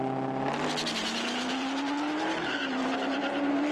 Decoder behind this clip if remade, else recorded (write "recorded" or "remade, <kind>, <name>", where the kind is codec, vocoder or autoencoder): recorded